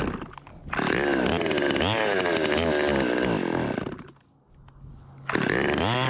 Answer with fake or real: real